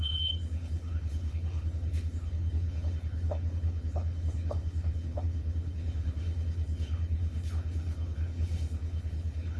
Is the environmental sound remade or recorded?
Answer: remade